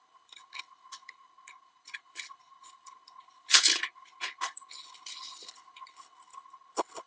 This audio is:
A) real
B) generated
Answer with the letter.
B